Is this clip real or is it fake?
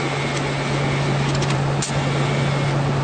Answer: real